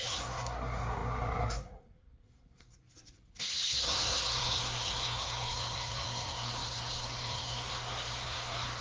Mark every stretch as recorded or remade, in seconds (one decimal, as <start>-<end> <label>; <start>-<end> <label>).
0.0-8.8 remade